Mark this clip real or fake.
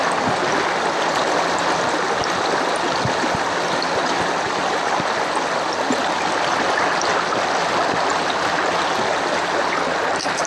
real